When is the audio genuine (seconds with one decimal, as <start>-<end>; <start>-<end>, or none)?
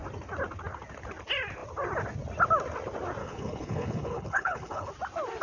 0.0-3.2; 4.9-5.4